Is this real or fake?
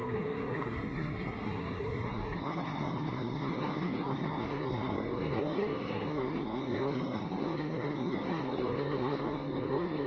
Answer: fake